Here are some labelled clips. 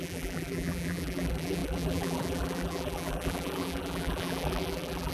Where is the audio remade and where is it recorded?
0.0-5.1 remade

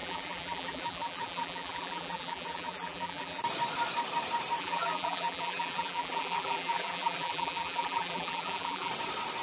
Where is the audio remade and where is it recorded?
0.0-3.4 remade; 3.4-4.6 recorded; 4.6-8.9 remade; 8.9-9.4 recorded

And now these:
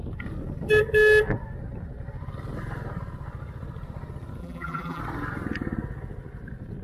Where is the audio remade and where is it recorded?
0.0-4.4 recorded; 4.4-5.0 remade; 5.0-6.8 recorded

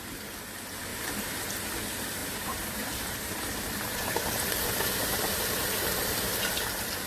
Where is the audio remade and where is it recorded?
0.0-0.9 recorded; 0.9-1.5 remade; 1.5-2.2 recorded; 2.2-6.5 remade; 6.5-7.1 recorded